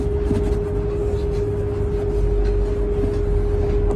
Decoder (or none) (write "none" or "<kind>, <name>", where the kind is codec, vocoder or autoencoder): none